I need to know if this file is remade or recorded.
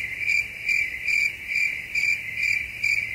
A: recorded